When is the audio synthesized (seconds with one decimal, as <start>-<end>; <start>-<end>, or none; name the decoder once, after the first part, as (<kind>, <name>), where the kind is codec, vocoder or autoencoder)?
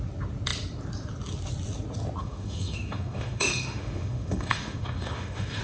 2.2-5.6 (autoencoder, DAC-VAE)